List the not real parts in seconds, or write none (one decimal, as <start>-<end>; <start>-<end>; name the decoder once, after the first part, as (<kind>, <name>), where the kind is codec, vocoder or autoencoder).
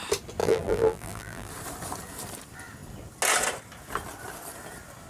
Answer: 0.4-1.5 (vocoder, BigVGAN v2)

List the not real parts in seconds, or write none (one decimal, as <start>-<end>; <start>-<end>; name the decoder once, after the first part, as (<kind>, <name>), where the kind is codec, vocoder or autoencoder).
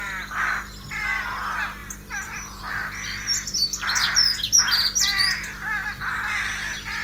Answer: 1.8-2.6 (vocoder, BigVGAN v2)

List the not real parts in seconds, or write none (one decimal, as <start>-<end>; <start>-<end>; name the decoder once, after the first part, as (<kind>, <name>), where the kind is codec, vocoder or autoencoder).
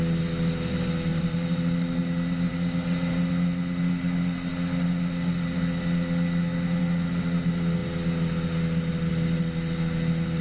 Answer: 1.1-3.3 (vocoder, BigVGAN v2)